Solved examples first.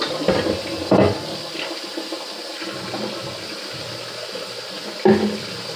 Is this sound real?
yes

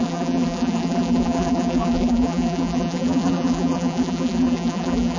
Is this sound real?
no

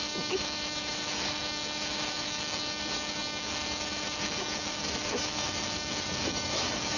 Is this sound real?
no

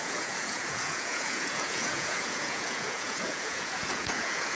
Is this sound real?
no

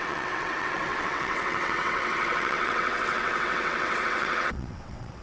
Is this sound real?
no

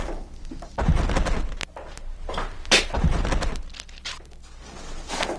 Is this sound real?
yes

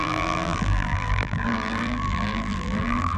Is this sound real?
no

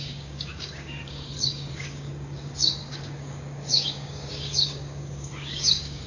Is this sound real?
no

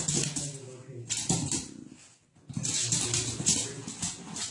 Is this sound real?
yes